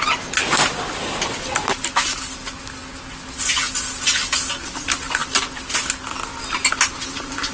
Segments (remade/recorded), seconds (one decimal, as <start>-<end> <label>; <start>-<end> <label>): 0.0-7.5 recorded